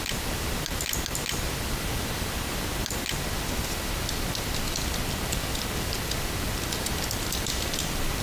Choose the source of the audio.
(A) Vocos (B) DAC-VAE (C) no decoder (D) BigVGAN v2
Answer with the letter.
C